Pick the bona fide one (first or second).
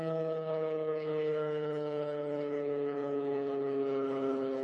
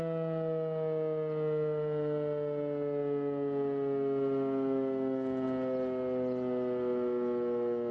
second